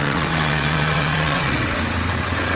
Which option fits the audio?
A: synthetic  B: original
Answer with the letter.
A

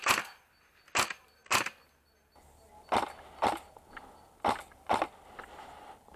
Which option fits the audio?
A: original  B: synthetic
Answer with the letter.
A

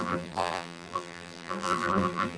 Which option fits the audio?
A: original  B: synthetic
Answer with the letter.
B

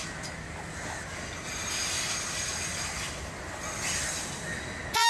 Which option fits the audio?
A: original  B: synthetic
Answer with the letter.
A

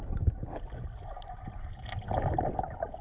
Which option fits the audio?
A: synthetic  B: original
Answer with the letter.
B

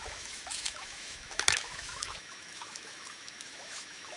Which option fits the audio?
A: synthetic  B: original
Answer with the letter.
A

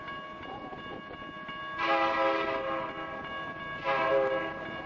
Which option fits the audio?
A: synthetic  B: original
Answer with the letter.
B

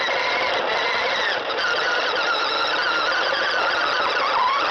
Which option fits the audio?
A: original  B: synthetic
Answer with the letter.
A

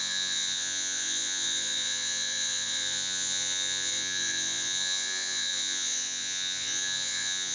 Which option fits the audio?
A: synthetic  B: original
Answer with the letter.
A